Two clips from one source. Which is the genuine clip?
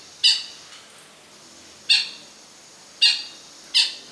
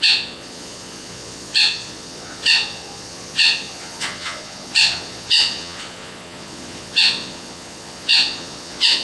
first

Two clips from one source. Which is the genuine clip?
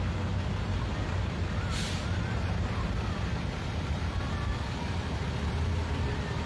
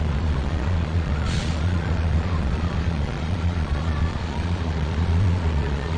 first